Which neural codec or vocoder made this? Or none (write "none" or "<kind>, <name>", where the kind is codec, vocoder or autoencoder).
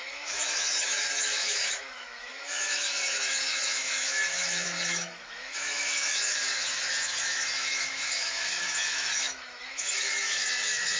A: autoencoder, DAC-VAE